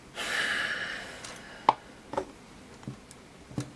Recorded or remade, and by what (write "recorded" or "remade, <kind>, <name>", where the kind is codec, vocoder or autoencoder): recorded